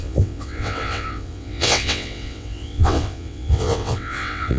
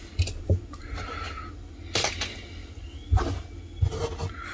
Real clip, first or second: second